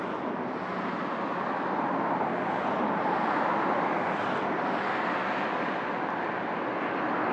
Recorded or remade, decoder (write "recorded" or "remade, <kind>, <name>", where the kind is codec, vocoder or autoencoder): recorded